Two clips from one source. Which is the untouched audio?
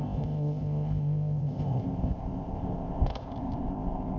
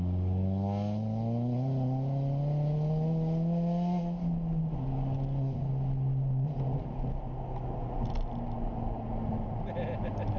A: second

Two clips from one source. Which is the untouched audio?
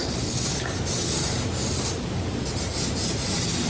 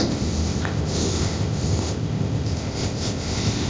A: first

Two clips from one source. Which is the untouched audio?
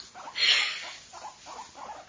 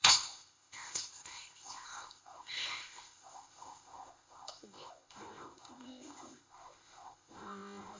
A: first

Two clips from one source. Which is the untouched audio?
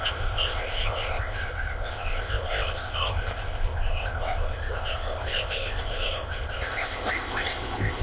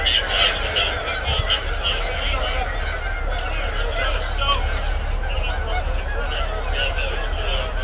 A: second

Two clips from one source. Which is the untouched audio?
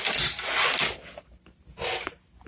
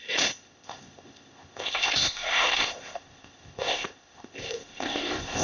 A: first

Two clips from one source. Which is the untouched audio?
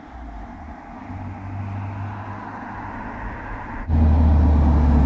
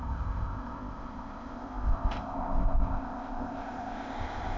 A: first